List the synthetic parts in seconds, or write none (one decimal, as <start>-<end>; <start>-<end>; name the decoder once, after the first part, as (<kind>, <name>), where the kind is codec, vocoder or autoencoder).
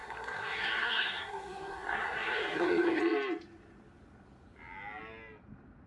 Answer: 0.0-3.0 (codec, SNAC)